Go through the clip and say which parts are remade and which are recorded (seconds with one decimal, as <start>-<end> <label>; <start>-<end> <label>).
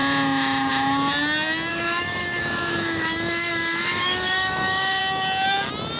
0.0-1.7 recorded; 1.7-5.0 remade; 5.0-6.0 recorded